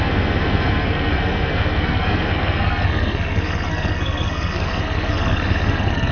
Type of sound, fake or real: fake